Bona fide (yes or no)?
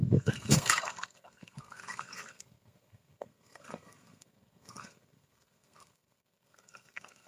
no